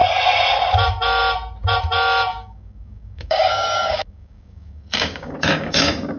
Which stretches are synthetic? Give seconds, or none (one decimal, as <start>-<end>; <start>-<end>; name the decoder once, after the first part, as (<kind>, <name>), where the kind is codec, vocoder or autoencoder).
2.3-6.2 (codec, DAC)